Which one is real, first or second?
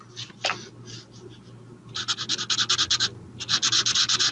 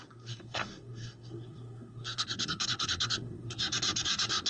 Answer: first